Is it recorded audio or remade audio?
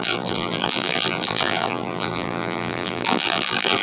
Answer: remade